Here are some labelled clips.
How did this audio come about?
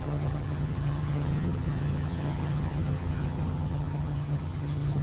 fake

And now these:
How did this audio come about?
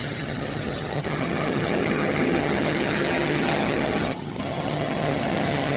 fake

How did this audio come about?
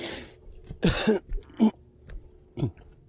real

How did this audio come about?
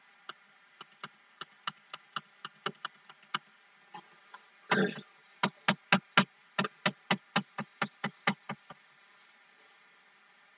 real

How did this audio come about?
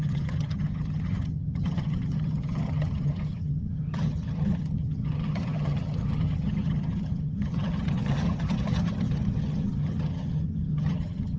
fake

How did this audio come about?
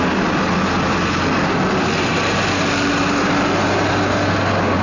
real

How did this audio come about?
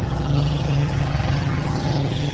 fake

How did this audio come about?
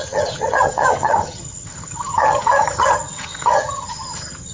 fake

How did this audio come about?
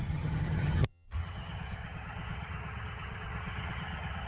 fake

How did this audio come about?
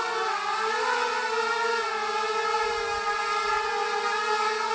real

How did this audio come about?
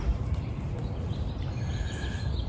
real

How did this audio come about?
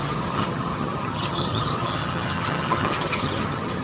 fake